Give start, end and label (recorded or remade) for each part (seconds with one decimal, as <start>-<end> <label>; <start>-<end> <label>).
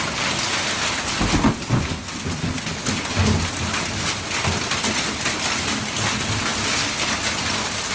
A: 0.0-7.9 recorded